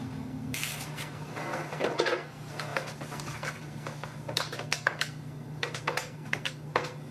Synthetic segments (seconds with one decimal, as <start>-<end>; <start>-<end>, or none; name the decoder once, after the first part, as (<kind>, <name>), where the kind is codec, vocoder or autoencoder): 0.0-7.1 (codec, SNAC)